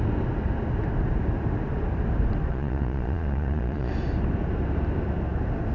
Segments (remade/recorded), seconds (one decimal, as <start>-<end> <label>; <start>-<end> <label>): 0.0-2.5 recorded; 2.5-3.9 remade; 3.9-5.7 recorded